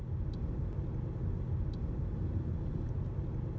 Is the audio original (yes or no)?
yes